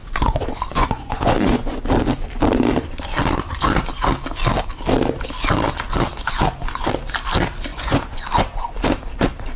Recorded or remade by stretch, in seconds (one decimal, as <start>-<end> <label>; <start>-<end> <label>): 0.0-1.8 remade; 1.8-7.7 recorded; 7.7-8.3 remade; 8.3-9.6 recorded